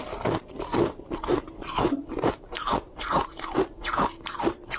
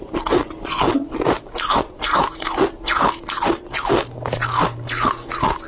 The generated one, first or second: first